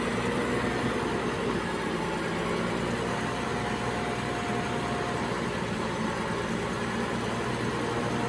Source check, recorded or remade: recorded